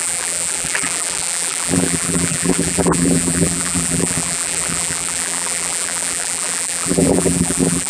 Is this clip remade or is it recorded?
remade